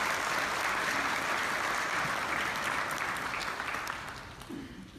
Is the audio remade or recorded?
recorded